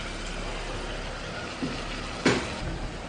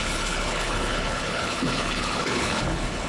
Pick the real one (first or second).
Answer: first